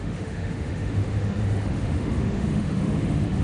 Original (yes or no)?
no